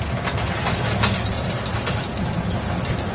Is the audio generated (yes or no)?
no